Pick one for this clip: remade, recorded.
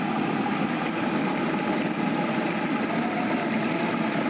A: recorded